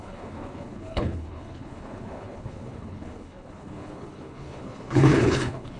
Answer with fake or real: fake